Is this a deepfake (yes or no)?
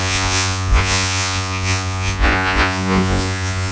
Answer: yes